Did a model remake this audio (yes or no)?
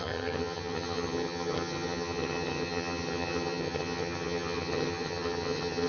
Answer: yes